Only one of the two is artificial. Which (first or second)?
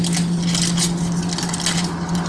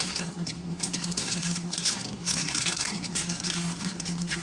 second